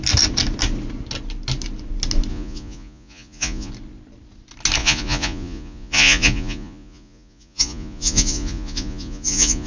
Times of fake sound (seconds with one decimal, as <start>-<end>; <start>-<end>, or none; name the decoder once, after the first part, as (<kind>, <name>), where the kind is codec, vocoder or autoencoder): 2.3-3.7 (vocoder, Vocos); 4.8-9.7